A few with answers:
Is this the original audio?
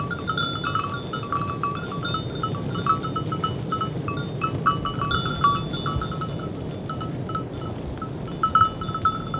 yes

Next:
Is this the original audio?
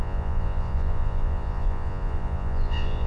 no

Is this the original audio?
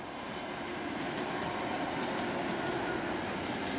yes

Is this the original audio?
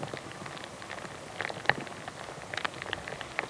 yes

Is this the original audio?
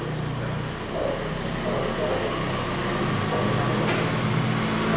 yes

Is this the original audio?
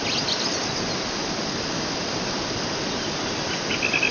yes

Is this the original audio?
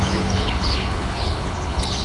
no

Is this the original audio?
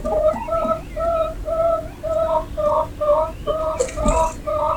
yes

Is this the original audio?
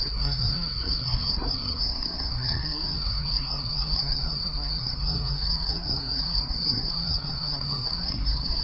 no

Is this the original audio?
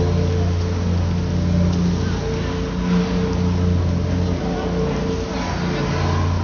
yes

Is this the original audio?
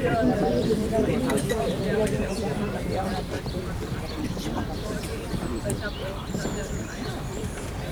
no